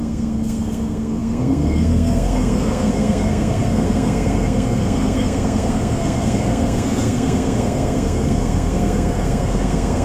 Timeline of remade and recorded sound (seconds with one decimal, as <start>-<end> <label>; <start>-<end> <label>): 0.0-10.0 remade